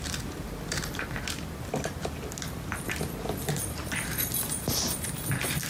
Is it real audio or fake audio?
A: real